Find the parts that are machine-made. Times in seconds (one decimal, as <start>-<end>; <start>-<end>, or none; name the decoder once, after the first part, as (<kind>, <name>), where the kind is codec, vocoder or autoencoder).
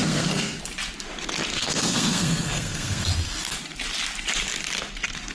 0.0-0.6 (codec, SNAC); 1.5-3.0